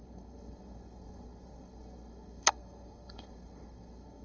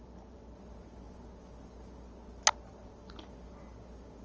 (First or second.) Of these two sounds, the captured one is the second